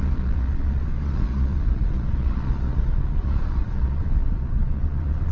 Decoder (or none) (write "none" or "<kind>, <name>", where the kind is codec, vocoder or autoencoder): vocoder, Vocos